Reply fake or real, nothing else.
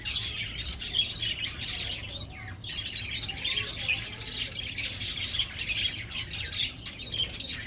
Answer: real